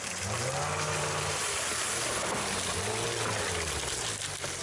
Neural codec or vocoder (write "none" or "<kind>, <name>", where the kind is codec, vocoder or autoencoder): none